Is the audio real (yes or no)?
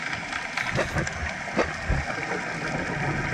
yes